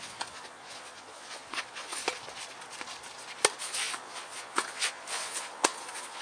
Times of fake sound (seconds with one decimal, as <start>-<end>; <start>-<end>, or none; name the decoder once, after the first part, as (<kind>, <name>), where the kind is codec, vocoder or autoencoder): 0.0-2.0 (vocoder, Vocos); 3.6-6.2